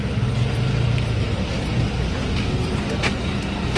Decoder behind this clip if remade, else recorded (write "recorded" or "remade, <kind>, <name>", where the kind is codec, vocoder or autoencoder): recorded